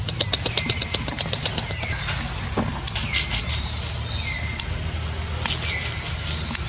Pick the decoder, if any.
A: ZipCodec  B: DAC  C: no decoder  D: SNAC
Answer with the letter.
C